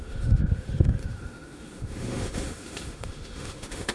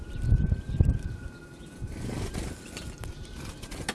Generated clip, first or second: first